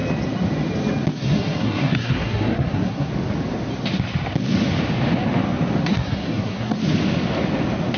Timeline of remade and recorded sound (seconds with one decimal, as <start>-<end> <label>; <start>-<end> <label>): 0.0-1.1 recorded; 1.1-3.1 remade; 3.1-5.8 recorded; 5.8-6.8 remade; 6.8-8.0 recorded